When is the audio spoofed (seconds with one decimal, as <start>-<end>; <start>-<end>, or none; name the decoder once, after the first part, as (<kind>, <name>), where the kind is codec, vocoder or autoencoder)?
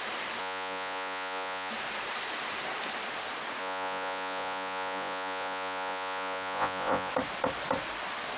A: 0.4-1.7 (vocoder, Vocos); 3.6-7.1